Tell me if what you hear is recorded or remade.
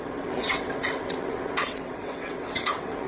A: remade